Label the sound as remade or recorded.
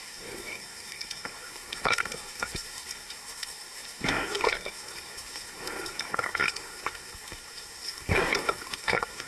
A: remade